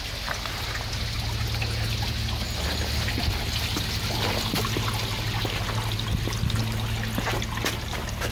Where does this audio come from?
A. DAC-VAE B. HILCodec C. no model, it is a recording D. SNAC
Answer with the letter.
C